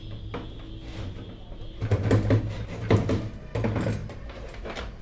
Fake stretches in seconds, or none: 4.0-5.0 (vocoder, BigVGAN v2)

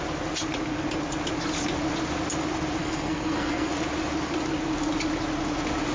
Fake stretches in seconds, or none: 2.8-3.7 (codec, SNAC)

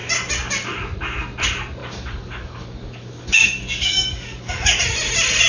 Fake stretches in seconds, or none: 1.8-4.8 (codec, DAC)

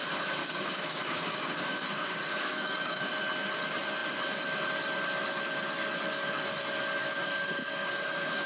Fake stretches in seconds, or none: 0.4-3.1 (codec, DAC); 7.0-8.5

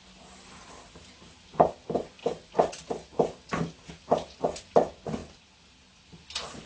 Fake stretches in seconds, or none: none

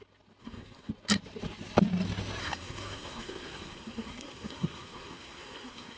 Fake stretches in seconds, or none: 0.4-0.9 (codec, SNAC); 2.4-6.0